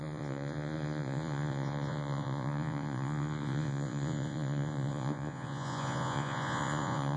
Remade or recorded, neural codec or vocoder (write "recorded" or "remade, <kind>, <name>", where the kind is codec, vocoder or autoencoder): remade, vocoder, Vocos